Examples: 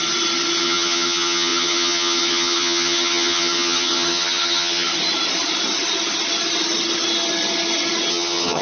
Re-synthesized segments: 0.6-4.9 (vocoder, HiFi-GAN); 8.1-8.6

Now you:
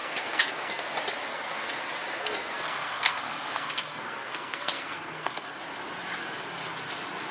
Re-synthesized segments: 0.0-0.8 (codec, SNAC); 1.3-1.8; 2.2-5.6

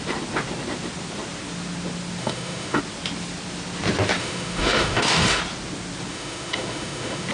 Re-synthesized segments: 2.2-2.8 (autoencoder, DAC-VAE); 4.2-5.4; 6.1-7.3

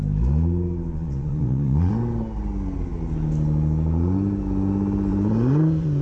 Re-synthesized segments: 0.9-1.9 (vocoder, Vocos); 5.1-6.0

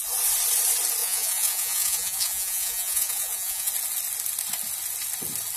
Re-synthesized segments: 1.0-3.7 (vocoder, Vocos)

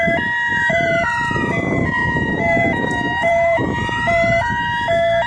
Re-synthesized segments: 0.5-1.5 (vocoder, BigVGAN v2); 2.0-4.5